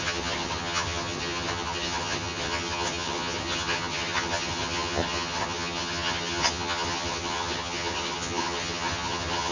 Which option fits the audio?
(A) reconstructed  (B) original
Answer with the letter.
A